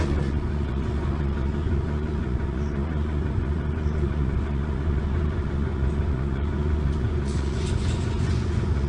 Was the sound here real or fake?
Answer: fake